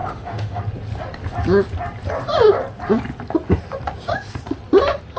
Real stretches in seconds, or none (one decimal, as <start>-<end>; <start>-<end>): 0.6-5.2